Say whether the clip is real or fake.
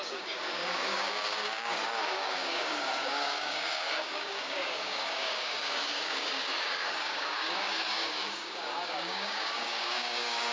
fake